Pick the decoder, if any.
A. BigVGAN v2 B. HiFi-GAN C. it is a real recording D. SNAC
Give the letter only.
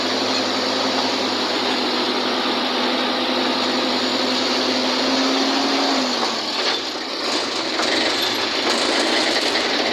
C